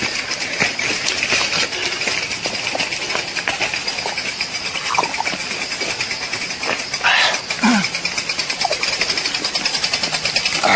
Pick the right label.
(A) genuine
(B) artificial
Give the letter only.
A